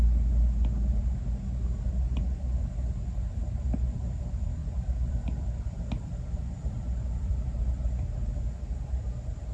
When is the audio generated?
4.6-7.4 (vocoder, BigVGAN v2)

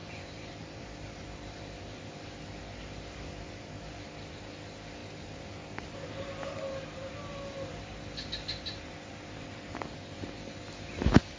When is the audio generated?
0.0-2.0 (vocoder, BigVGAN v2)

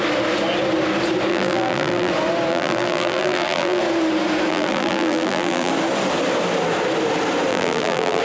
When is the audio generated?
1.3-2.1 (vocoder, BigVGAN v2); 2.5-3.8; 4.5-5.7; 7.5-8.2

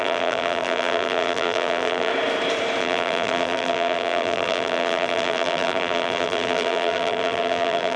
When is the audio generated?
0.0-2.1 (vocoder, BigVGAN v2); 2.8-8.0

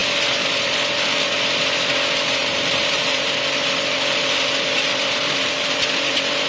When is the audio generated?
0.0-1.3 (vocoder, BigVGAN v2); 2.4-6.5

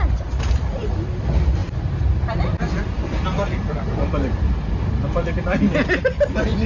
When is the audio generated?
0.0-6.7 (vocoder, BigVGAN v2)